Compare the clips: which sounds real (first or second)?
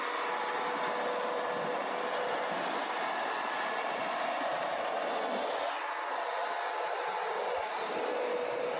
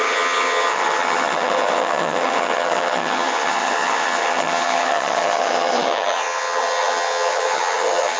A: first